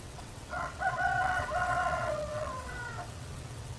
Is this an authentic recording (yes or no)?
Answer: no